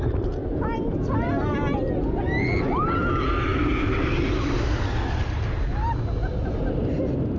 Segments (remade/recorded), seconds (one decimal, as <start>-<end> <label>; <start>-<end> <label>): 0.0-7.4 recorded